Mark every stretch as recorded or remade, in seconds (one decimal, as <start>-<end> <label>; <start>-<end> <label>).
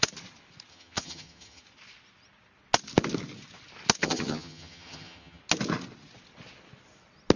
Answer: 0.0-0.7 recorded; 0.7-1.6 remade; 1.6-4.0 recorded; 4.0-5.4 remade; 5.4-7.4 recorded